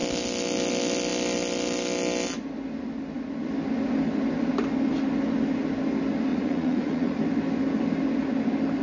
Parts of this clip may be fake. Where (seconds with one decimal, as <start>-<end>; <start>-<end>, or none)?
6.3-7.2